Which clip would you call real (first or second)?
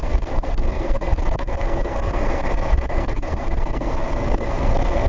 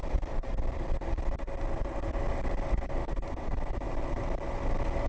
second